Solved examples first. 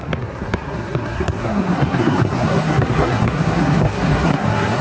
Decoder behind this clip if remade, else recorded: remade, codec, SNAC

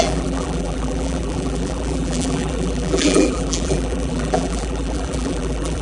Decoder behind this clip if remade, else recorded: remade, vocoder, BigVGAN v2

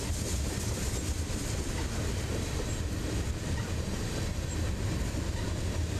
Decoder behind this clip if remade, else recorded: recorded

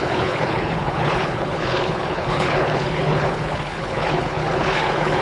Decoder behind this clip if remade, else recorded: remade, codec, HILCodec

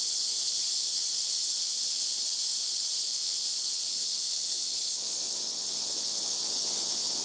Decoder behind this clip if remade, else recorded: remade, vocoder, Vocos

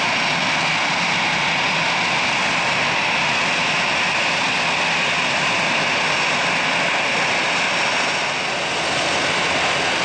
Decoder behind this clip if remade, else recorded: recorded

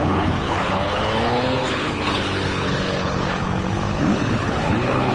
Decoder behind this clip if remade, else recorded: remade, codec, HILCodec